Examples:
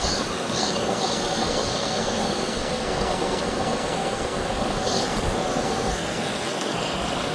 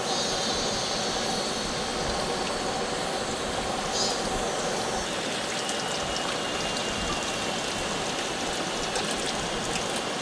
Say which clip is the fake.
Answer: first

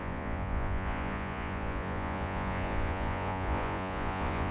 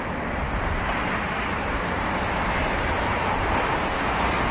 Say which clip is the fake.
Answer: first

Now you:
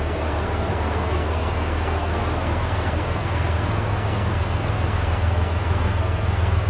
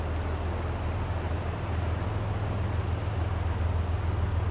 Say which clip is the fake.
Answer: first